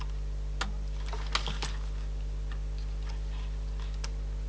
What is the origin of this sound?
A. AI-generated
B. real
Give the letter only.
B